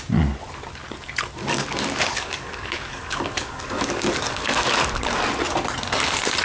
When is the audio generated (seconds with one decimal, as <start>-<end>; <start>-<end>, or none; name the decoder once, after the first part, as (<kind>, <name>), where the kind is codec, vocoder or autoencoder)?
1.4-5.0 (codec, DAC)